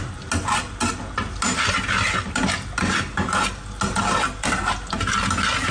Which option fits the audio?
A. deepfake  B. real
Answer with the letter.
B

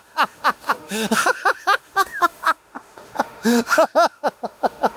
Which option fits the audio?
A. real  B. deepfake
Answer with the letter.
B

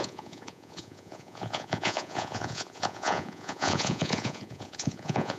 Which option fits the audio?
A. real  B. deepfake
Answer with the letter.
B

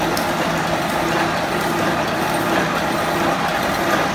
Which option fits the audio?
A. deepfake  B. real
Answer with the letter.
B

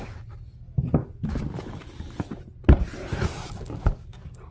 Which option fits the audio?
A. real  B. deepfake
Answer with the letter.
A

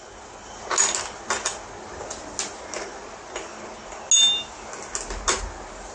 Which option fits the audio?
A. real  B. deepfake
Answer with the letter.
A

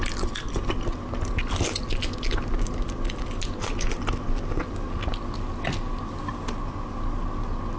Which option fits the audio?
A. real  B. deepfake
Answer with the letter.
A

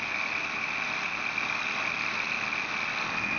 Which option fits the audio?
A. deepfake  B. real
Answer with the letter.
B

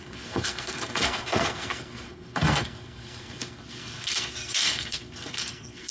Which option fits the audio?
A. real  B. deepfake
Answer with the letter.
B